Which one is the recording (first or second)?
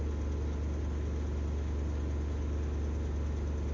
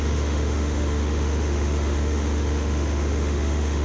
first